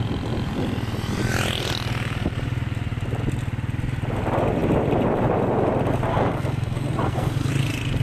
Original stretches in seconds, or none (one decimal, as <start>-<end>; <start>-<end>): 0.0-6.1; 7.5-8.0